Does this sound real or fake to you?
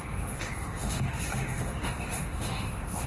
fake